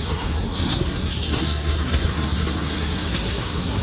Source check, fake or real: fake